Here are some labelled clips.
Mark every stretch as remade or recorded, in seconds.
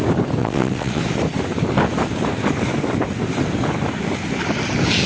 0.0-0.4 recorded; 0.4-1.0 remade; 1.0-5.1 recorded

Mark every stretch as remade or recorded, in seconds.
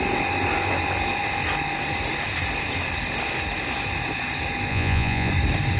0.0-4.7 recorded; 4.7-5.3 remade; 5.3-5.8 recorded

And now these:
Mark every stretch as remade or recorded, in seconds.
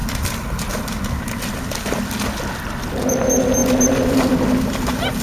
0.0-5.2 recorded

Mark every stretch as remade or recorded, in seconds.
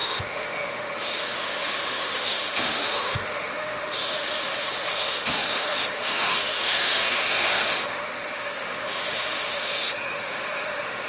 0.0-11.1 remade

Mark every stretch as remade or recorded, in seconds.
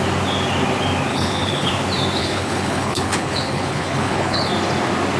0.0-1.1 recorded; 1.1-1.7 remade; 1.7-2.2 recorded; 2.2-4.5 remade; 4.5-5.2 recorded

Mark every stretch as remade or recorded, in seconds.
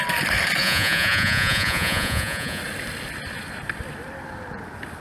0.0-0.6 recorded; 0.6-2.6 remade; 2.6-5.0 recorded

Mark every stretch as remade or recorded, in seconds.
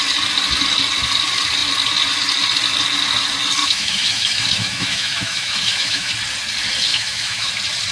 0.0-3.6 recorded; 3.6-6.1 remade; 6.1-6.9 recorded; 6.9-7.5 remade; 7.5-7.9 recorded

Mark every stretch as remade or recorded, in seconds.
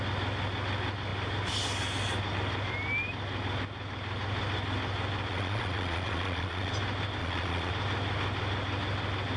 0.0-5.3 recorded; 5.3-6.7 remade; 6.7-7.2 recorded; 7.2-7.7 remade; 7.7-9.4 recorded